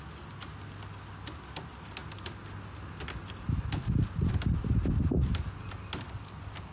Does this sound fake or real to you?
real